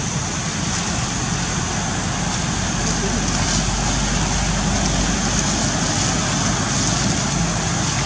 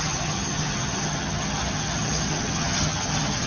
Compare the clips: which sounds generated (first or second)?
second